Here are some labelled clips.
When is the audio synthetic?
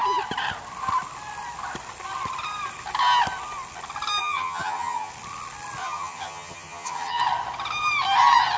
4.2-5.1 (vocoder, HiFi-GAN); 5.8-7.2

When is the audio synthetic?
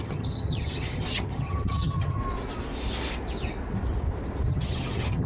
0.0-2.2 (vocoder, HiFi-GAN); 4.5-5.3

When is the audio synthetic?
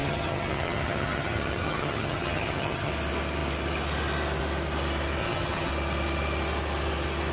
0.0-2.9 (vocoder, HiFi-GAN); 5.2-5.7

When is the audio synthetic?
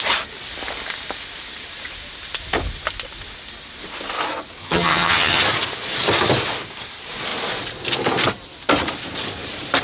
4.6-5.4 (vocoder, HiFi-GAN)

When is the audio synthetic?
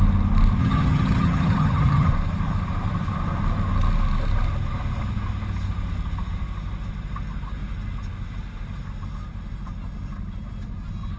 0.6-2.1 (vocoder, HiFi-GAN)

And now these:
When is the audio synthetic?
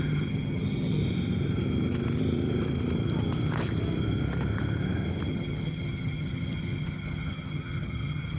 0.0-1.0 (vocoder, HiFi-GAN); 5.3-8.4